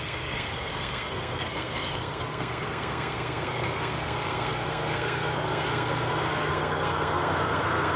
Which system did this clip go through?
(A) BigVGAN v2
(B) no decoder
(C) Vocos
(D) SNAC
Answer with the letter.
D